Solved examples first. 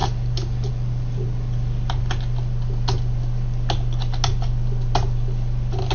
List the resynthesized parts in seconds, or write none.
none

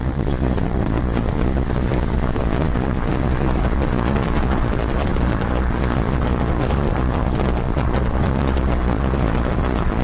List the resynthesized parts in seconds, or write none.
0.0-10.0

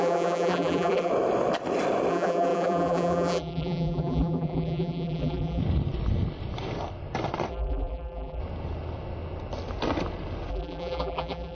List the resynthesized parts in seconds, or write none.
0.0-1.1; 2.1-5.6; 7.5-8.4; 10.5-11.5

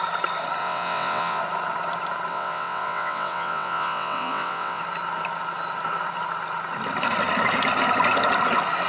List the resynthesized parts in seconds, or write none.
0.6-1.4; 2.3-4.8

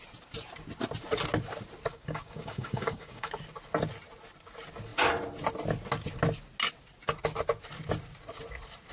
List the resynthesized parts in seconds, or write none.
1.9-3.3

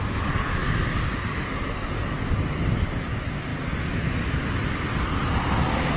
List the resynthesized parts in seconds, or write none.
0.6-1.5

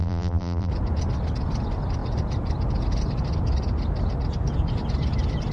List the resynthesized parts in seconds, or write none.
0.0-0.7

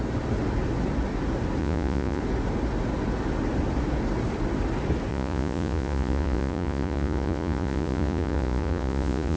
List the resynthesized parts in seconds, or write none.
1.6-2.2; 5.1-9.4